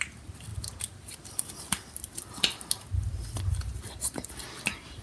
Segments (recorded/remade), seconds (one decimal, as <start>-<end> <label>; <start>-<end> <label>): 0.0-5.0 recorded